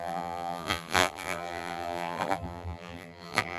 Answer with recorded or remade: remade